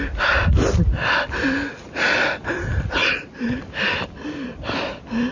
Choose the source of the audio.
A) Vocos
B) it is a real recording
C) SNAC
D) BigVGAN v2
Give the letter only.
B